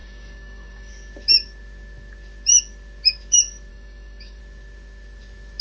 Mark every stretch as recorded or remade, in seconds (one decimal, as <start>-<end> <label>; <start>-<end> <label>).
0.0-0.9 remade; 0.9-3.7 recorded; 3.7-4.4 remade; 4.4-5.6 recorded